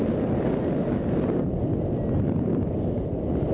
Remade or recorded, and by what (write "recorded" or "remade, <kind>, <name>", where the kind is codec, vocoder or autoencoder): recorded